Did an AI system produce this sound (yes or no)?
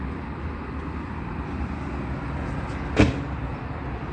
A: no